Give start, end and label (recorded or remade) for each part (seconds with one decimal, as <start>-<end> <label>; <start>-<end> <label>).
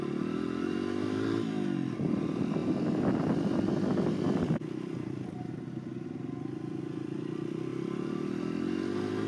0.0-9.3 recorded